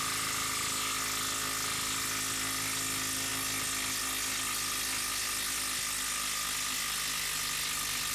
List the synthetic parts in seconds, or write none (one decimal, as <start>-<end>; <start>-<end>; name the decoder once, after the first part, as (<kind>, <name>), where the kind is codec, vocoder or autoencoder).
none